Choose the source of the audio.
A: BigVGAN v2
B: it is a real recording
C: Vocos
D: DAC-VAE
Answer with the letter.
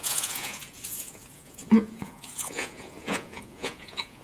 C